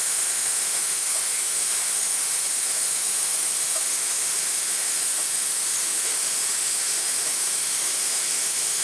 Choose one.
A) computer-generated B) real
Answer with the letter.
A